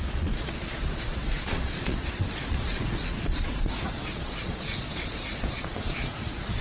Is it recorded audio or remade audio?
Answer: remade